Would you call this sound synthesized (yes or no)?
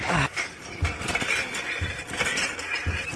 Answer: no